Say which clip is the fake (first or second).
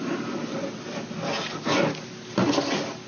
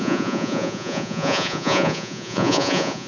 second